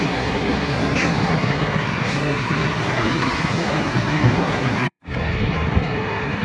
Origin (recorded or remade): remade